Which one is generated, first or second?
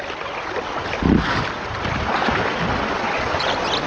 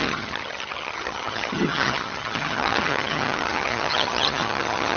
second